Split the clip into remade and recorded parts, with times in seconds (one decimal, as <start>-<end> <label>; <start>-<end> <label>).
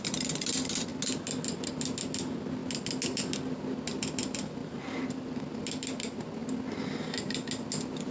0.0-4.6 recorded; 4.6-5.6 remade; 5.6-8.1 recorded